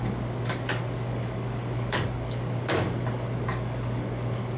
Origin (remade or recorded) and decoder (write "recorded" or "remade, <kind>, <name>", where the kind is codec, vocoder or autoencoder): remade, codec, DAC